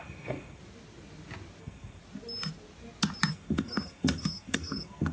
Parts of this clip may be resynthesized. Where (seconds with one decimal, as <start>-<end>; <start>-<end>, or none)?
0.0-0.6; 1.6-2.0; 3.3-5.1